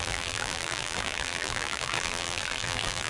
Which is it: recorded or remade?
remade